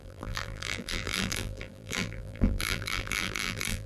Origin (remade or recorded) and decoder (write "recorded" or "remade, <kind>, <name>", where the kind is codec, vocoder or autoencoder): remade, vocoder, BigVGAN v2